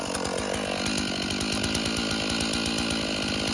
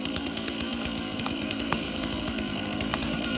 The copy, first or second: second